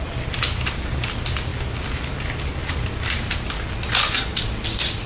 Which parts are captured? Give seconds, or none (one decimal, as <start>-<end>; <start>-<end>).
0.0-5.1